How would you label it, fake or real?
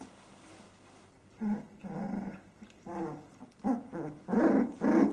real